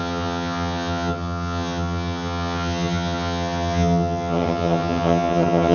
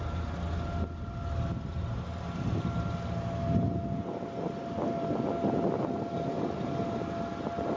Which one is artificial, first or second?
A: first